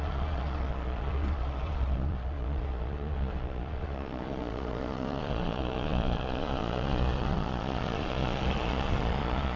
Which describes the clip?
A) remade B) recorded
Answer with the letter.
A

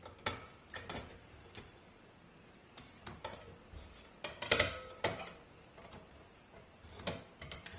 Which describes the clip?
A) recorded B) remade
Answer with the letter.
A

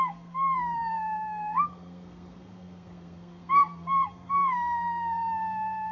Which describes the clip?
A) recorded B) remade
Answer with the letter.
B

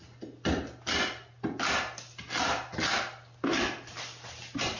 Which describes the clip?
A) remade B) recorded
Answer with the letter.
B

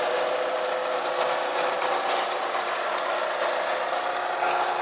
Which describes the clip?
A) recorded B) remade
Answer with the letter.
A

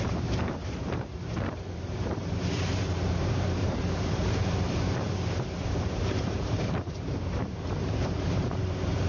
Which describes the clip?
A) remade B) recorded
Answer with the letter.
A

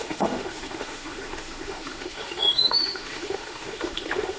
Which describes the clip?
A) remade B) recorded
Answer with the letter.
A